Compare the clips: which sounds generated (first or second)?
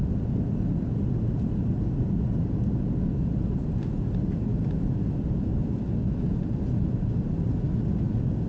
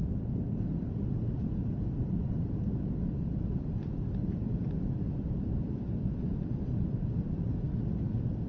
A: second